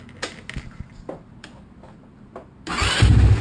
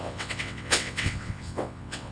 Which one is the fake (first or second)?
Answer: second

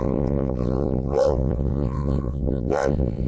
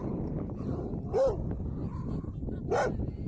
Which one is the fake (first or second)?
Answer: first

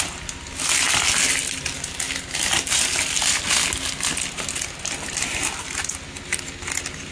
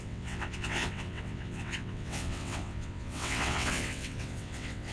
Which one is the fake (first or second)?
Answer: second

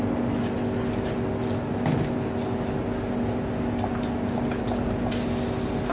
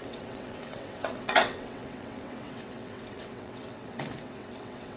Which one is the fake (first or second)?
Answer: second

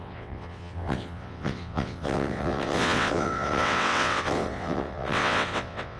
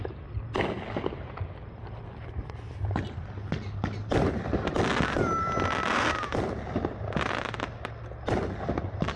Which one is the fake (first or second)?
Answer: first